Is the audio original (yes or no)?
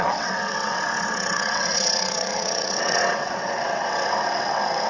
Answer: no